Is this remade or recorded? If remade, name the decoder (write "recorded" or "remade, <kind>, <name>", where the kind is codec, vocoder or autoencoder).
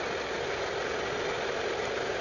recorded